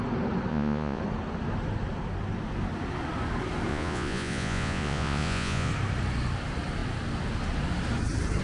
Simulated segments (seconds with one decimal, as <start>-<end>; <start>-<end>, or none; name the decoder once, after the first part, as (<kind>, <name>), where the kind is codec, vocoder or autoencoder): 0.5-1.0 (vocoder, Vocos); 3.7-5.7